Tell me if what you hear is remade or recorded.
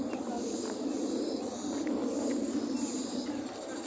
recorded